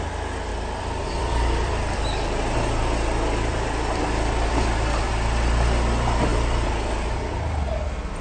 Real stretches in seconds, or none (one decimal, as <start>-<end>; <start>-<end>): 0.0-0.5; 2.0-3.5; 5.1-6.3; 7.4-8.2